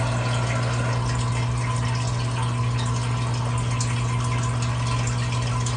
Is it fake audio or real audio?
real